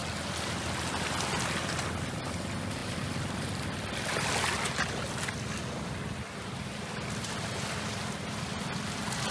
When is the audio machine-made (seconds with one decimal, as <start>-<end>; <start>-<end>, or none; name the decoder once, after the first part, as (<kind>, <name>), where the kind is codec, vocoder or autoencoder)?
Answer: none